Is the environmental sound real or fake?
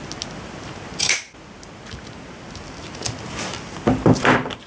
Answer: real